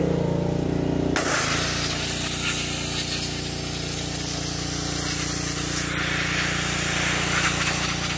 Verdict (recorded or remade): recorded